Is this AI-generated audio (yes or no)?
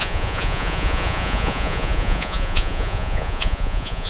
yes